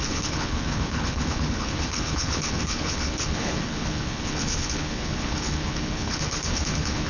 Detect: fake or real fake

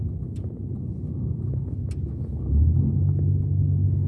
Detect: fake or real real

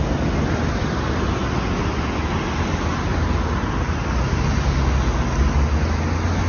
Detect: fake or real real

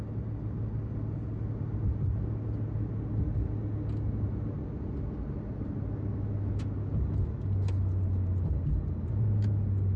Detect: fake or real real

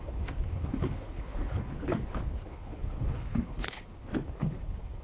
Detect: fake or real fake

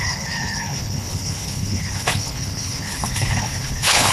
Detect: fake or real fake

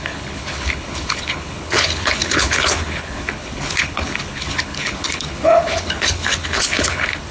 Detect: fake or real fake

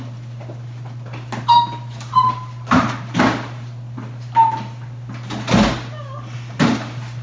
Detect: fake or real real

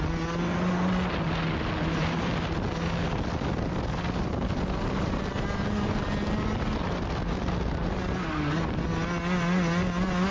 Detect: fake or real real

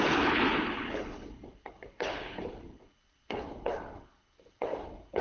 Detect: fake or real fake